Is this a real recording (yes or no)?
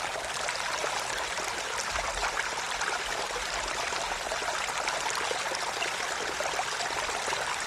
yes